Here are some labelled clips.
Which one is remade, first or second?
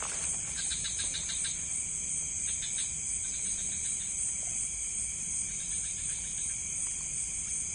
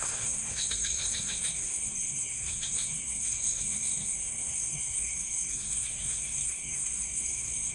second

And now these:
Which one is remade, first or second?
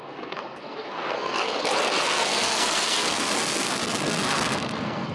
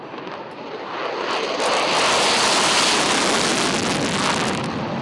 first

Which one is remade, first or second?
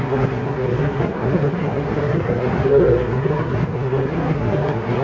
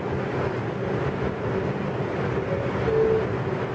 first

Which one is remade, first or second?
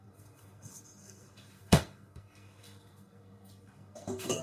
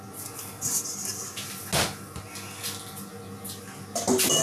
first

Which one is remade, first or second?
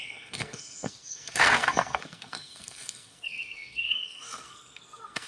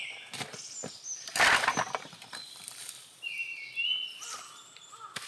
first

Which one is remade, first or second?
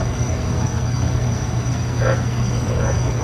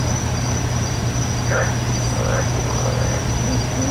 first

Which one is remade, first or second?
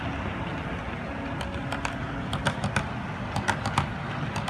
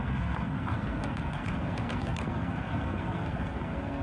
second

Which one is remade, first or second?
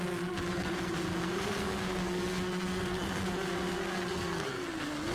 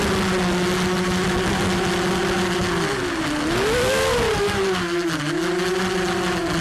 first